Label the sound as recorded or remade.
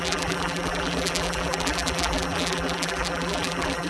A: remade